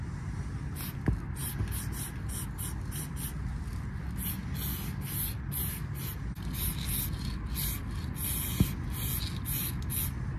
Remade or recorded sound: recorded